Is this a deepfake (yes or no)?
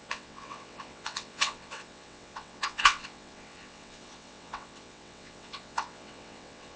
yes